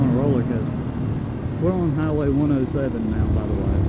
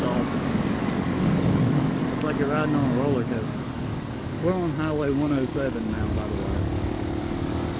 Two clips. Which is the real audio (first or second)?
first